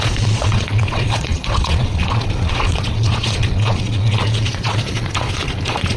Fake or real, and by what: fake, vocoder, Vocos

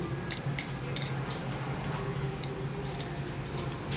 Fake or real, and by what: real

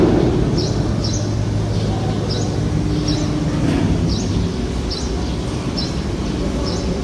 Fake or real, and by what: real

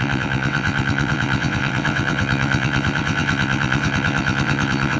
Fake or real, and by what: fake, vocoder, WaveNeXt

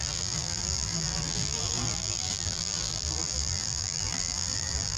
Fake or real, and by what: fake, vocoder, BigVGAN v2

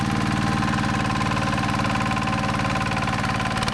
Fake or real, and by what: real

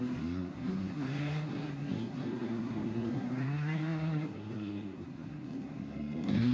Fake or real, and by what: fake, codec, SNAC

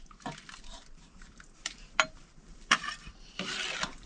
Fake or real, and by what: fake, vocoder, BigVGAN v2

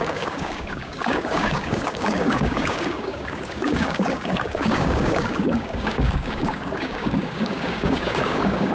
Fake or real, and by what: fake, codec, DAC